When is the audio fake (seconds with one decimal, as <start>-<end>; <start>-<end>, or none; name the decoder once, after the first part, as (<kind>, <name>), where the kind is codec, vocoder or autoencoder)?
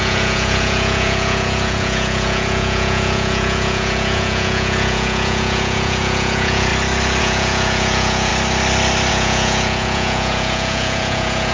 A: 0.0-6.7 (vocoder, Vocos); 7.2-8.3; 9.1-11.5